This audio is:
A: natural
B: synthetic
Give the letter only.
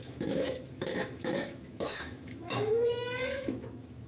B